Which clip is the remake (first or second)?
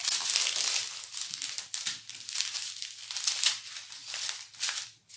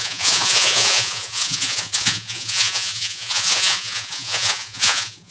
second